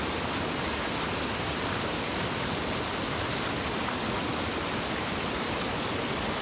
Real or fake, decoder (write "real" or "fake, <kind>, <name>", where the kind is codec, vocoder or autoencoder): real